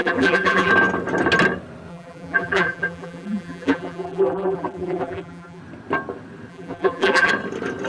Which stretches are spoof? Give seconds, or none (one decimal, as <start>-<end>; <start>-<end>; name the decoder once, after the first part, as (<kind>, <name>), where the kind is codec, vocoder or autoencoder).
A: 0.0-0.7 (vocoder, BigVGAN v2); 1.9-5.6; 6.5-7.3